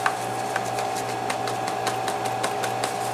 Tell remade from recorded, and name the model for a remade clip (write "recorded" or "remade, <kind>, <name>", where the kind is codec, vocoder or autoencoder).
recorded